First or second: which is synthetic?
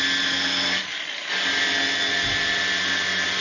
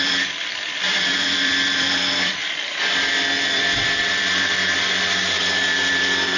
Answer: second